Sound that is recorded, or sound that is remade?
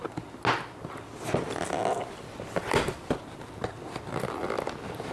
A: recorded